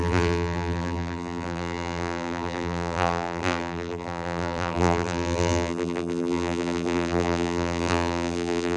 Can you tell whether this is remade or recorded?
remade